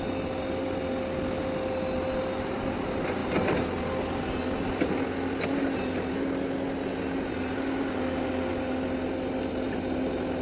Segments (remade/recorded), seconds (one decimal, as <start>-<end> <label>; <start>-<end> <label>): 0.0-10.4 recorded